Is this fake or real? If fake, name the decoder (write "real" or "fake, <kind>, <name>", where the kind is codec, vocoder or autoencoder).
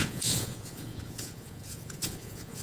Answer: fake, vocoder, Vocos